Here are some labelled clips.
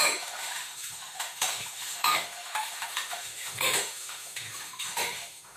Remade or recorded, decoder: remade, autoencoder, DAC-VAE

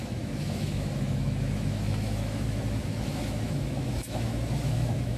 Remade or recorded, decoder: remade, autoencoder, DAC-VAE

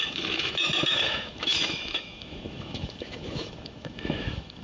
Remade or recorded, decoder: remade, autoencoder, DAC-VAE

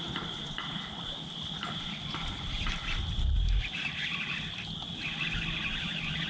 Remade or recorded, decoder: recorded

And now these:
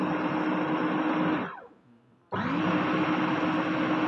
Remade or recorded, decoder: recorded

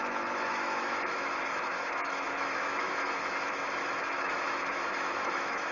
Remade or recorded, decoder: remade, autoencoder, DAC-VAE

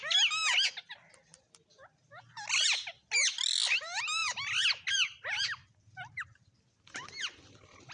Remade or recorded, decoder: recorded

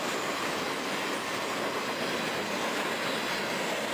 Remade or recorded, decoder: recorded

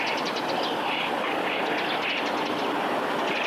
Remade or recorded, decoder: recorded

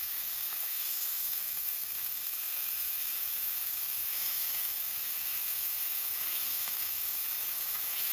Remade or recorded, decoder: remade, autoencoder, DAC-VAE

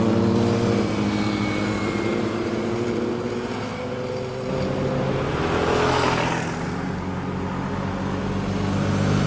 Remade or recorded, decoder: recorded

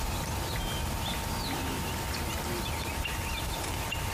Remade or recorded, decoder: recorded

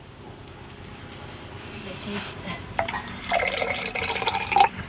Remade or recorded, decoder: recorded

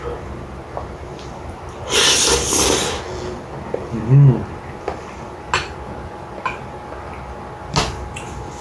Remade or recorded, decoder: recorded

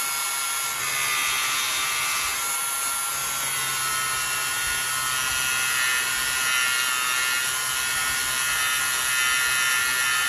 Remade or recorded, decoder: recorded